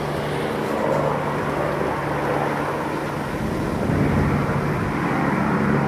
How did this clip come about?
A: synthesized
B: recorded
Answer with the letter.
B